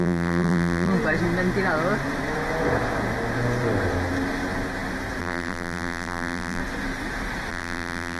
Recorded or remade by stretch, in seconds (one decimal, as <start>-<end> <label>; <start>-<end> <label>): 0.0-0.9 remade; 0.9-5.2 recorded; 5.2-6.6 remade; 6.6-7.5 recorded; 7.5-8.2 remade

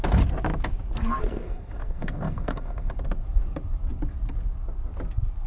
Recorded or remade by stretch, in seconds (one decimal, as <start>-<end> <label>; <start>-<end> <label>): 0.0-1.2 recorded; 1.2-2.9 remade; 2.9-5.5 recorded

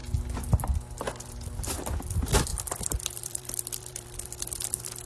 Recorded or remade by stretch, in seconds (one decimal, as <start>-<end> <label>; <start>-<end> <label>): 0.0-1.6 recorded; 1.6-5.0 remade

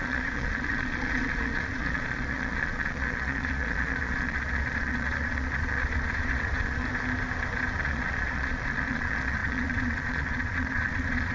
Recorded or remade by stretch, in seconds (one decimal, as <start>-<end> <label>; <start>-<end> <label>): 0.0-6.9 remade; 6.9-7.8 recorded; 7.8-11.3 remade

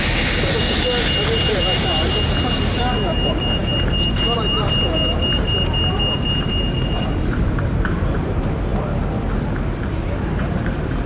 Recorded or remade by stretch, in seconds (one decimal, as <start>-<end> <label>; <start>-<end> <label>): 0.0-8.7 remade; 8.7-9.8 recorded; 9.8-11.1 remade

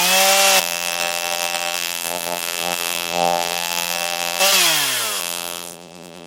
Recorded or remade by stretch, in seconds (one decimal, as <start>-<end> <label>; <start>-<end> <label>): 0.0-0.6 recorded; 0.6-4.4 remade; 4.4-5.2 recorded; 5.2-6.3 remade